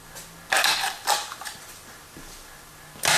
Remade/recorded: recorded